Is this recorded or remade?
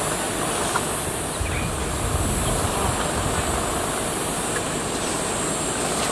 recorded